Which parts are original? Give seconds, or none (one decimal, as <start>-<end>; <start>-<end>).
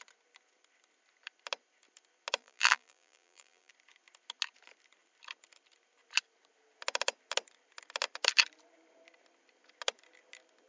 0.0-2.4; 3.7-10.7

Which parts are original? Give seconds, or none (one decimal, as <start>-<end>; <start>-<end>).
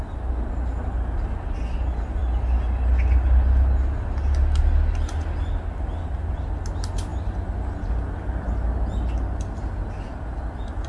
0.0-10.9